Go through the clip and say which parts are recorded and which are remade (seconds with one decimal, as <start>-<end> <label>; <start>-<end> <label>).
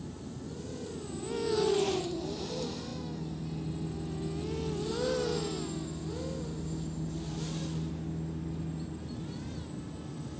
0.0-10.4 recorded